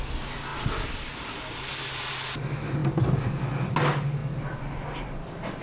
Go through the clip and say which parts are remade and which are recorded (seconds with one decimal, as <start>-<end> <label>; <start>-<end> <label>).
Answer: 0.0-5.6 recorded